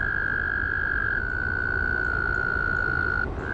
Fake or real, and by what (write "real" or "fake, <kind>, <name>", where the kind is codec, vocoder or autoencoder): real